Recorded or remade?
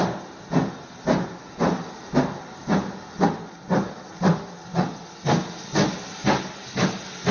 recorded